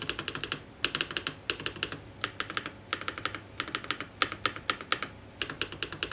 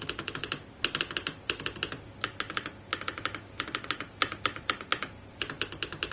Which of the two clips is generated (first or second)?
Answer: second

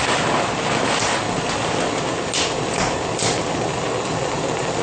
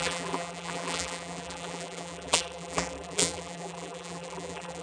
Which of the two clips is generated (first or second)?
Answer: second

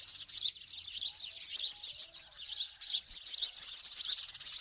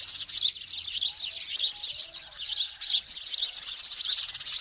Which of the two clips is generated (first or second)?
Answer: first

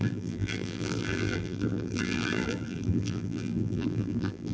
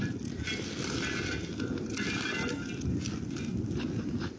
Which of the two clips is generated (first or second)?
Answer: first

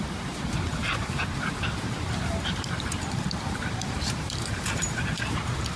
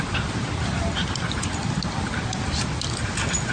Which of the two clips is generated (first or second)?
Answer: first